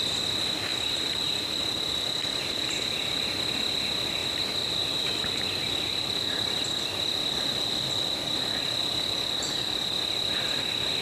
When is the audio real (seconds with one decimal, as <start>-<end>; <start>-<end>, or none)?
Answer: 0.0-0.7; 1.6-4.2; 8.8-11.0